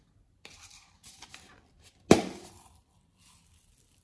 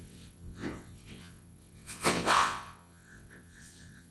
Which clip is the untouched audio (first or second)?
first